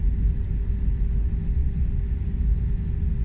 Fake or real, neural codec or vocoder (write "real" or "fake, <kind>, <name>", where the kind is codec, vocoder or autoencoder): real